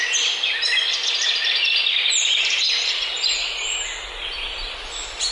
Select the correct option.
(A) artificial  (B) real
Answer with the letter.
B